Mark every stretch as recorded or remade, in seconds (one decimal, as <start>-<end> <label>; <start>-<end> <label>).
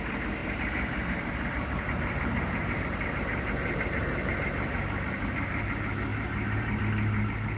0.0-0.4 recorded; 0.4-4.3 remade; 4.3-6.1 recorded; 6.1-6.8 remade; 6.8-7.6 recorded